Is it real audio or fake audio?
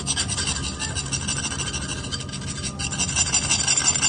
real